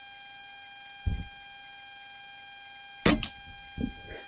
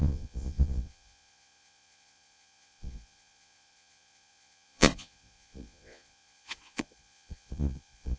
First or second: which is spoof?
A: second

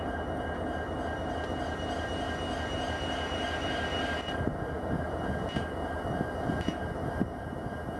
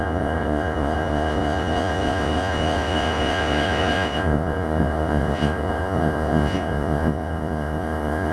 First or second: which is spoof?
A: second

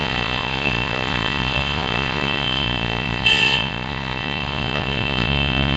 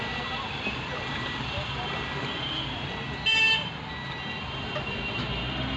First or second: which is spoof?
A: first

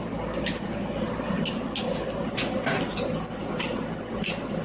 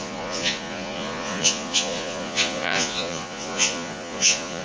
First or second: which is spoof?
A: second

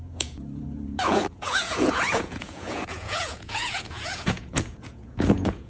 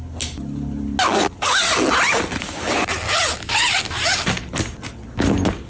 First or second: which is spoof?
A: first